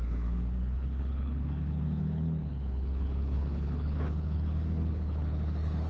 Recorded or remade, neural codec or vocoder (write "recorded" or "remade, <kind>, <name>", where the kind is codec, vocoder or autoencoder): remade, codec, HILCodec